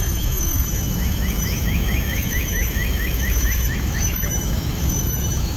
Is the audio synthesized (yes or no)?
yes